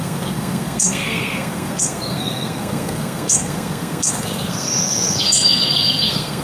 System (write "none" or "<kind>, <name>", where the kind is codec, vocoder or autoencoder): codec, SNAC